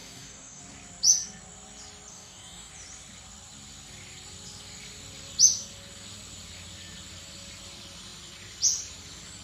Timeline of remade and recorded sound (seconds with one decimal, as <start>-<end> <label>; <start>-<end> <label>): 0.0-0.6 remade; 0.6-2.1 recorded; 2.1-2.7 remade; 2.7-9.4 recorded